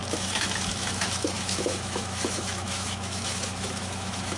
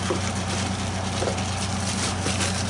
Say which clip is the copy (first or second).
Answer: first